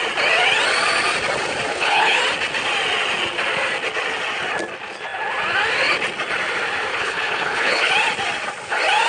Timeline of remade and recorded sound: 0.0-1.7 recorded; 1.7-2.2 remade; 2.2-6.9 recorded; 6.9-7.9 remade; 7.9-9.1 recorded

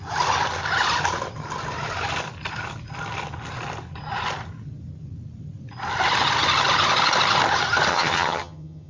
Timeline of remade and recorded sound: 0.0-7.9 recorded; 7.9-8.9 remade

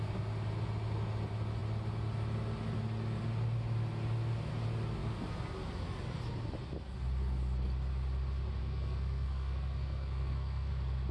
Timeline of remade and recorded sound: 0.0-8.6 recorded; 8.6-10.7 remade; 10.7-11.1 recorded

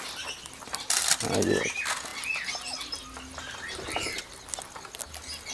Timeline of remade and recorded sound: 0.0-5.5 recorded

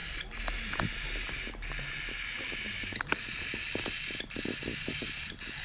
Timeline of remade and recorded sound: 0.0-5.6 recorded

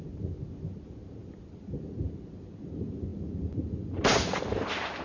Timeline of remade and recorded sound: 0.0-5.0 recorded

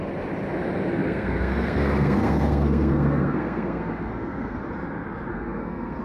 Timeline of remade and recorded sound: 0.0-1.0 recorded; 1.0-4.6 remade; 4.6-5.3 recorded; 5.3-6.0 remade

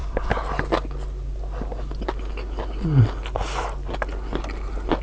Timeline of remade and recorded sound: 0.0-5.0 recorded